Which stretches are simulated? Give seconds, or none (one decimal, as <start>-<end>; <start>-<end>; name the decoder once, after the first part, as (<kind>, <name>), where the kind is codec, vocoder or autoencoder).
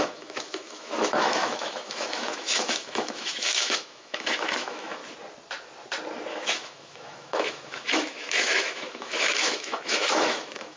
0.0-5.0 (autoencoder, DAC-VAE); 6.3-10.8